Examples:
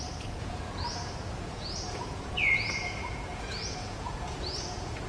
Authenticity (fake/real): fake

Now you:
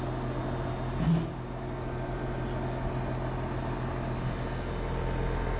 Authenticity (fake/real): real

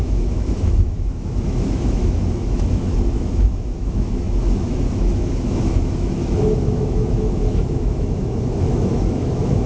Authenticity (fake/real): fake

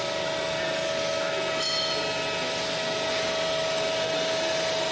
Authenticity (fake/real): real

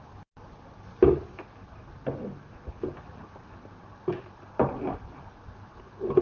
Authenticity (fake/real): real